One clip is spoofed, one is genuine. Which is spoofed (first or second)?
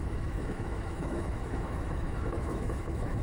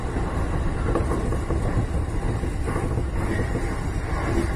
first